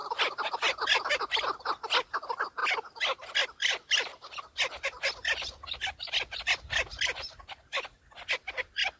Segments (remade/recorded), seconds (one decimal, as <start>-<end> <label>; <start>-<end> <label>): 0.0-9.0 recorded